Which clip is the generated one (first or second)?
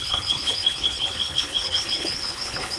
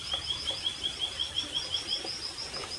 first